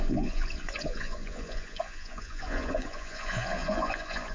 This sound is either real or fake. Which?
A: fake